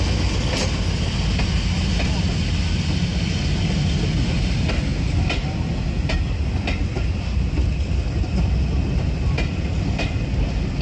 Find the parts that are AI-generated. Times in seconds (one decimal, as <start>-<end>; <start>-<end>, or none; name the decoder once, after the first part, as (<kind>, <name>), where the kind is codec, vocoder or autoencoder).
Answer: none